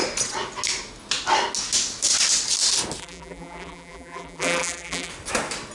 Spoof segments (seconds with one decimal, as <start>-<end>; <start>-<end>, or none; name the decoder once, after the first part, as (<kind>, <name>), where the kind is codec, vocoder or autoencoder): 3.0-5.1 (vocoder, BigVGAN v2)